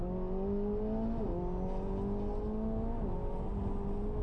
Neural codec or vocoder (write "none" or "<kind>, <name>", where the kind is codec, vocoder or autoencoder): none